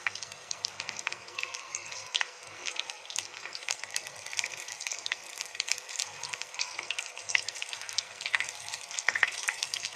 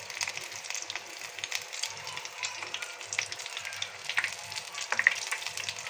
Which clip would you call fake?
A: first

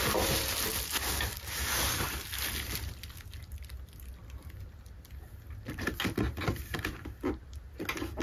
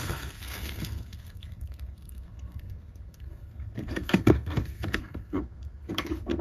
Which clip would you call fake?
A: second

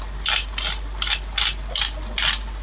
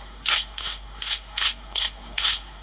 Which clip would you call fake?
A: second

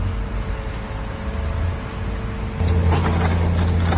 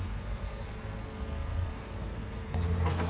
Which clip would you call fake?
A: second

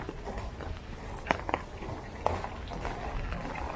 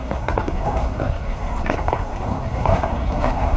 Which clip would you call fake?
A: second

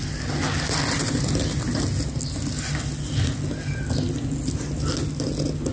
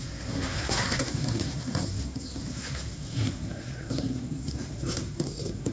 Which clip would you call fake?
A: second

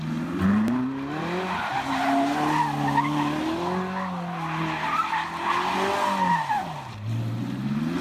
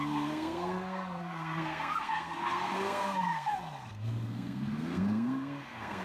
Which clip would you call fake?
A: second